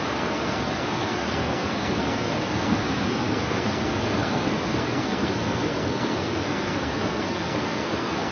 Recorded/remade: remade